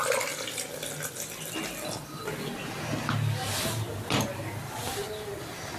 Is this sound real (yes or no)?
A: yes